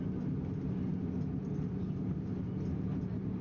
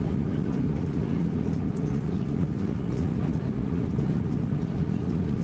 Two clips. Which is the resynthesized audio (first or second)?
second